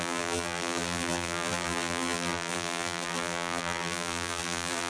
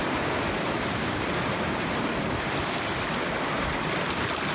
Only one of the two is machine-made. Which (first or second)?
first